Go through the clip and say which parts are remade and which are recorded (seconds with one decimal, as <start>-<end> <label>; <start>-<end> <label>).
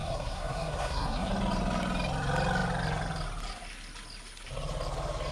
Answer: 0.0-1.3 remade; 1.3-5.3 recorded